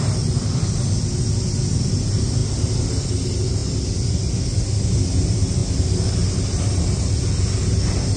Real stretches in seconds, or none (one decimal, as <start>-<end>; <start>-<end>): 0.0-8.2